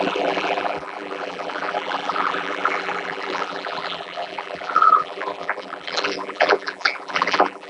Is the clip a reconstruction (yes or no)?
yes